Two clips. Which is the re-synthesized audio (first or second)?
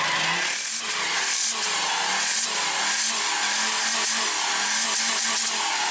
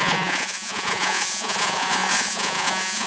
second